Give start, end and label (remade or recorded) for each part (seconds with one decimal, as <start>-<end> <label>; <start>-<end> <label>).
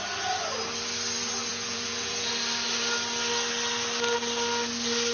0.0-1.5 recorded; 1.5-2.3 remade; 2.3-5.1 recorded